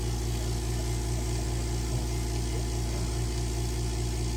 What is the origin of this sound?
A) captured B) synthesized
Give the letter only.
A